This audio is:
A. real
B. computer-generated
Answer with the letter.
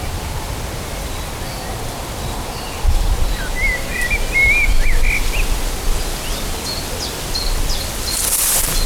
A